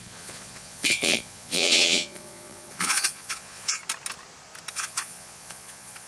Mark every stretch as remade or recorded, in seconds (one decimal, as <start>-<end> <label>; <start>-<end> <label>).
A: 0.0-3.8 remade; 3.8-4.7 recorded; 4.7-6.1 remade